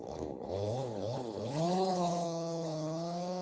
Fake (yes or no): yes